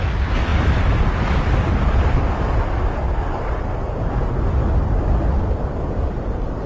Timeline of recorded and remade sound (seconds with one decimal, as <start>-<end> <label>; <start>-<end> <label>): 0.0-6.7 recorded